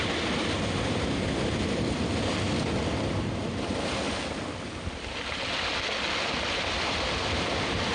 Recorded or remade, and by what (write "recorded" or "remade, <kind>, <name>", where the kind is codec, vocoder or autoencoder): recorded